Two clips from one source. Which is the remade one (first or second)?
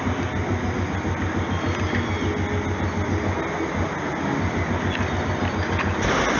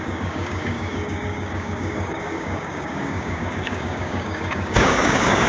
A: second